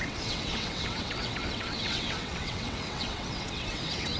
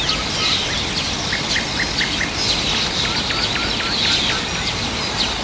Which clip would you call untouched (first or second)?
second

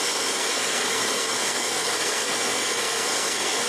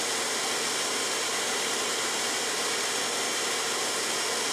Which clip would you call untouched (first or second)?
second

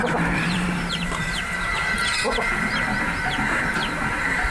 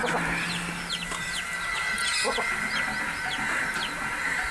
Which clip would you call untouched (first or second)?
second